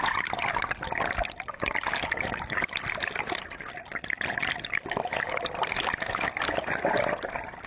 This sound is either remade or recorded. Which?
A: recorded